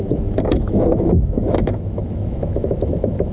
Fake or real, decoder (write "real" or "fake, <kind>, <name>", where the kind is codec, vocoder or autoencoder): fake, autoencoder, DAC-VAE